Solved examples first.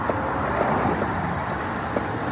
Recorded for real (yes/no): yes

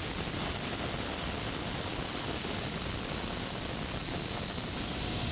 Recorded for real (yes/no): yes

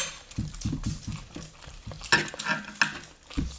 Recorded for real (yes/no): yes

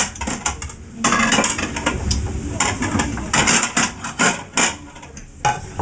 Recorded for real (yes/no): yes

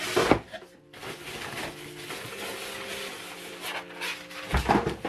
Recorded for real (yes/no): yes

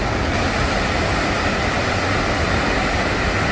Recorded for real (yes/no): yes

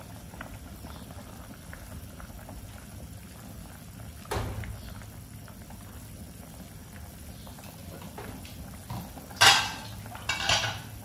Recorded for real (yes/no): yes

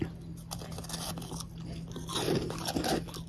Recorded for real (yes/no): yes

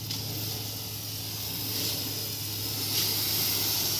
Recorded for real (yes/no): yes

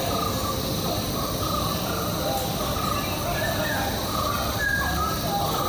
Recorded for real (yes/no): yes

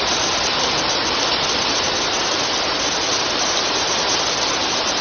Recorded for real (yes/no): yes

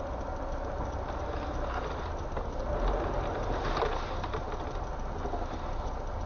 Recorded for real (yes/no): yes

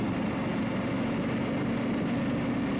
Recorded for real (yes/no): yes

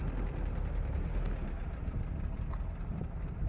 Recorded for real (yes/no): yes